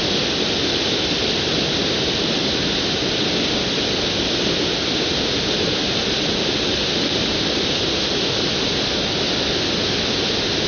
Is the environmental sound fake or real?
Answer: real